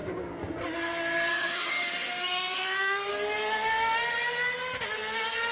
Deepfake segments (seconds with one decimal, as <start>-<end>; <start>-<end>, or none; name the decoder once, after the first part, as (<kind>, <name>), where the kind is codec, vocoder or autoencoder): 1.3-3.1 (autoencoder, DAC-VAE)